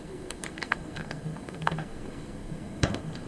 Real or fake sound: fake